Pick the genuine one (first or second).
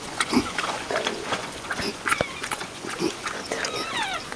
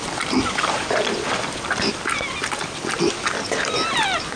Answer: second